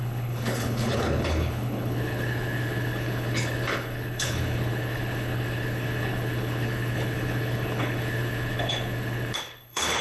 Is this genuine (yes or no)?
no